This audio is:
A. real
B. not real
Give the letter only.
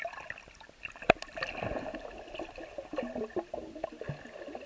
A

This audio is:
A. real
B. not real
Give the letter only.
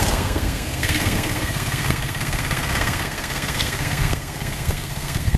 B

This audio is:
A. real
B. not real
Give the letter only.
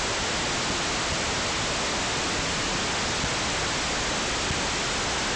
A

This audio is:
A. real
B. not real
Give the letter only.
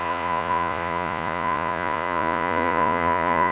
B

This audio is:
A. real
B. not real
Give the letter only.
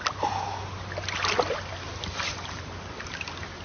A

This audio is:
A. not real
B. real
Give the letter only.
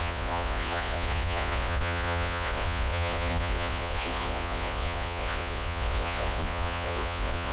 A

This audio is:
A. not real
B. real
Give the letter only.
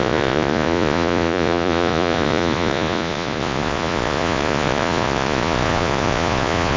A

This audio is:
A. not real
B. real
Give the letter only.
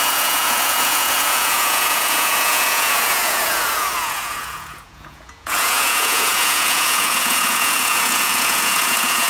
A